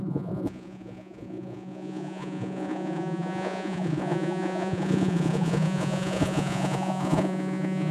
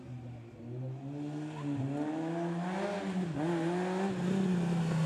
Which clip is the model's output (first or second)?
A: first